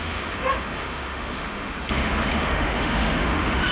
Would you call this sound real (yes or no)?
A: no